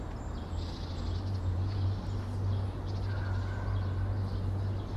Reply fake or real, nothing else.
real